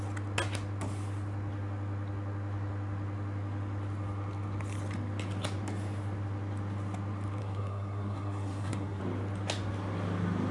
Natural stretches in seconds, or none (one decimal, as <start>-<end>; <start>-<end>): 0.0-7.4; 9.0-10.5